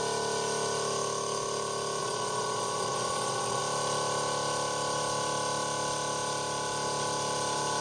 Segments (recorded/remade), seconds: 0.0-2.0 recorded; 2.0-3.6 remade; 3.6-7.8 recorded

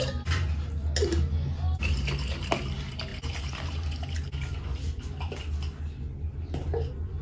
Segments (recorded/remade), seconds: 0.0-7.2 recorded

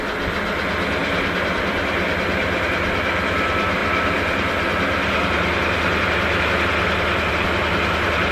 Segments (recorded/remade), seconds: 0.0-8.3 recorded

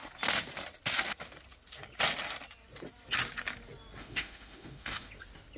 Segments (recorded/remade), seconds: 0.0-4.0 recorded; 4.0-5.1 remade; 5.1-5.6 recorded

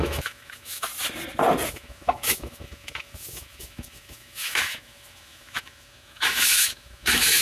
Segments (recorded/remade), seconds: 0.0-0.9 remade; 0.9-1.7 recorded; 1.7-7.4 remade

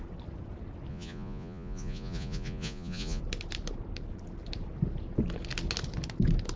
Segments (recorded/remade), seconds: 0.0-0.9 recorded; 0.9-3.2 remade; 3.2-6.6 recorded

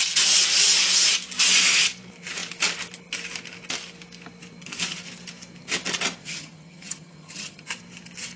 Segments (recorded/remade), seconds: 0.0-6.2 recorded; 6.2-7.7 remade; 7.7-8.4 recorded